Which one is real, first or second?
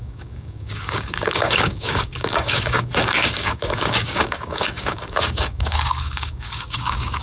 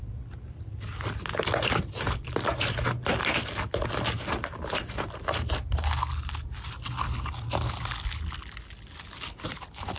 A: second